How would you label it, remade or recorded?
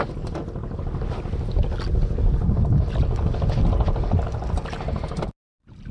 recorded